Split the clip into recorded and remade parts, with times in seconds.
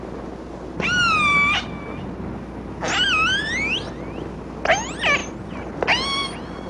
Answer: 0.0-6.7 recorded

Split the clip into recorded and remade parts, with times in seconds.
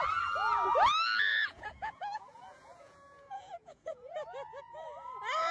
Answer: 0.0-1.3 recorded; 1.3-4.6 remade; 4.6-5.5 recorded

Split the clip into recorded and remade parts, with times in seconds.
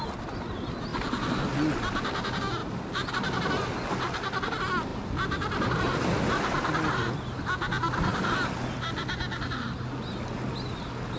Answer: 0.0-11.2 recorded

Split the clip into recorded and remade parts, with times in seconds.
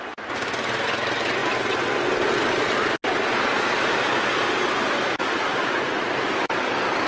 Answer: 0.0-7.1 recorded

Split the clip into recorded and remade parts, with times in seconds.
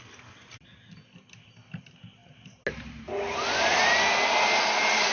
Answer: 0.0-5.1 recorded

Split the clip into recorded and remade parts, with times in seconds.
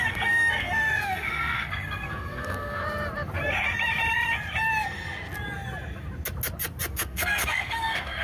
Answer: 0.0-2.8 remade; 2.8-6.9 recorded; 6.9-8.2 remade